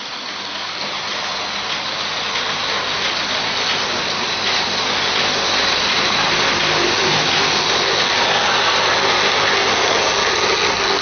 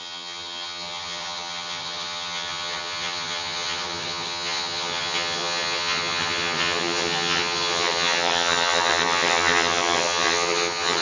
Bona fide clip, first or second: first